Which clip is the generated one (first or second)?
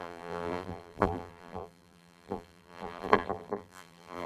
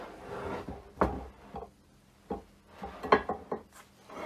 first